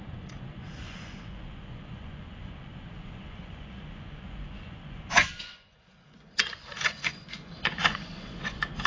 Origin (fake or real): fake